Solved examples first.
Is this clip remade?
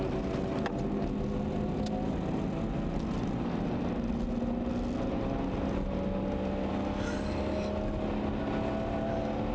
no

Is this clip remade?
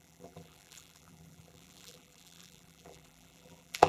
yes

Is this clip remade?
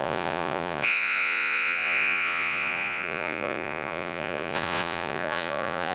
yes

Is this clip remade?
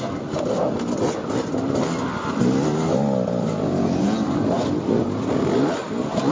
no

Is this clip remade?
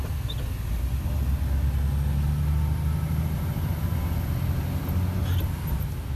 no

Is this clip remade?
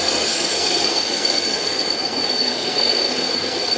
yes